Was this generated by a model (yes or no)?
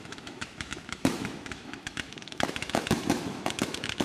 yes